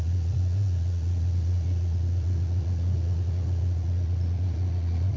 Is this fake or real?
fake